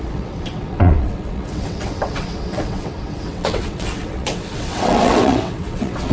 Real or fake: fake